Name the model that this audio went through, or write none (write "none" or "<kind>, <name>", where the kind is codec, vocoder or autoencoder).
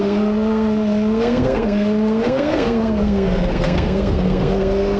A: codec, SNAC